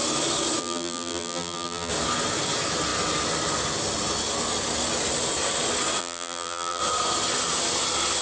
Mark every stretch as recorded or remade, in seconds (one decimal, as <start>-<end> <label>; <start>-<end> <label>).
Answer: 0.0-0.6 recorded; 0.6-1.9 remade; 1.9-6.0 recorded; 6.0-6.8 remade; 6.8-8.2 recorded

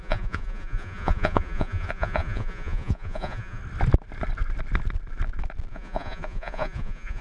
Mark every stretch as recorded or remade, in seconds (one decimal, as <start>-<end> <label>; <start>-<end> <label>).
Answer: 0.0-3.6 remade; 3.6-5.7 recorded; 5.7-7.2 remade

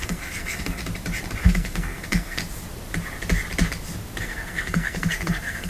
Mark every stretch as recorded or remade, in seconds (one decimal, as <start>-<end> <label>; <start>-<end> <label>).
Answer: 0.0-0.8 remade; 0.8-1.4 recorded; 1.4-2.4 remade; 2.4-4.2 recorded; 4.2-5.7 remade

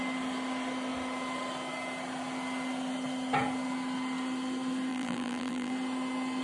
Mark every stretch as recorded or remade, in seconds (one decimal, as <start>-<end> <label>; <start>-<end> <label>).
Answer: 0.0-4.9 recorded; 4.9-5.7 remade; 5.7-6.4 recorded

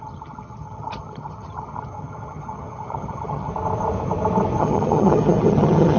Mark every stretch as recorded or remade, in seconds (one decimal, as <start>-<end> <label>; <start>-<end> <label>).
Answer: 0.0-3.5 remade; 3.5-4.6 recorded; 4.6-6.0 remade

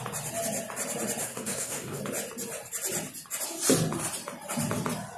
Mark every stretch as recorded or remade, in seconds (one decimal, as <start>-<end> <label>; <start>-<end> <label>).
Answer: 0.0-1.2 recorded; 1.2-2.0 remade; 2.0-5.2 recorded

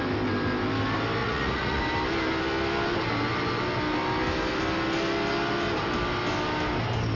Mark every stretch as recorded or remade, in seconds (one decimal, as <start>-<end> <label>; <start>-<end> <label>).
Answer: 0.0-1.2 recorded; 1.2-1.8 remade; 1.8-7.1 recorded